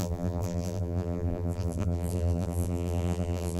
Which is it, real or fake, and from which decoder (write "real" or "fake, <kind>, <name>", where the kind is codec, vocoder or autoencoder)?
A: fake, vocoder, BigVGAN v2